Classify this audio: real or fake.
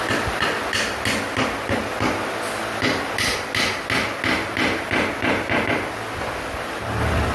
real